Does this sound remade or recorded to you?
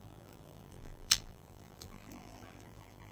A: remade